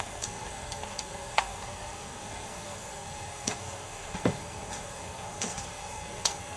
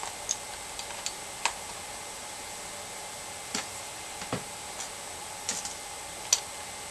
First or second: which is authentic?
second